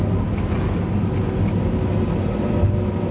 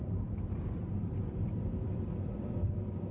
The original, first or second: first